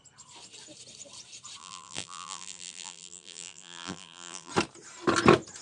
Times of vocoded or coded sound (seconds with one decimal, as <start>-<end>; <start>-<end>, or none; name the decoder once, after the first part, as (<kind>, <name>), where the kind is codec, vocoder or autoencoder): 1.6-4.5 (vocoder, BigVGAN v2)